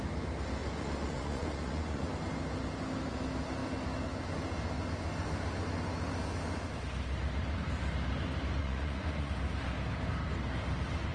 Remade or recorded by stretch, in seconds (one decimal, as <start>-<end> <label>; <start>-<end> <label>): 0.0-0.6 recorded; 0.6-2.1 remade; 2.1-8.6 recorded; 8.6-9.3 remade; 9.3-11.1 recorded